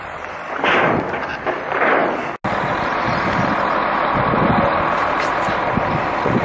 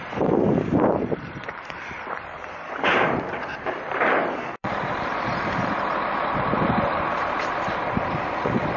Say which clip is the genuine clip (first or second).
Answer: first